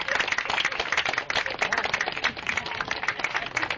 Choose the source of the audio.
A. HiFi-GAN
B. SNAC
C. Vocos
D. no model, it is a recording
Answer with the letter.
D